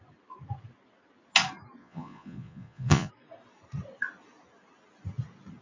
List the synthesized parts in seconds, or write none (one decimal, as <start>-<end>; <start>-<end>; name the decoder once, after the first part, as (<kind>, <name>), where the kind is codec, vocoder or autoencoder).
1.8-3.1 (vocoder, Vocos)